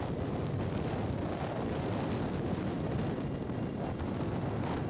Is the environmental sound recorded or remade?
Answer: recorded